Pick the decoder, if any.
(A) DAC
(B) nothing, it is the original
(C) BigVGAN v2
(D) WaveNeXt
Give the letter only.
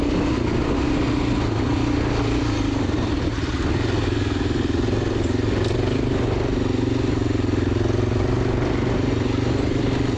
B